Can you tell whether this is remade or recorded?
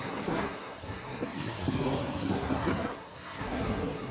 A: remade